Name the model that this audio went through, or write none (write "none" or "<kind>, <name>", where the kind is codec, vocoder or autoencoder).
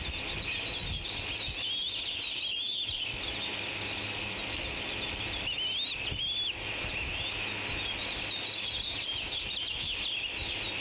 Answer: none